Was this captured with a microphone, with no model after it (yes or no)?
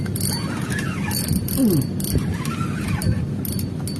yes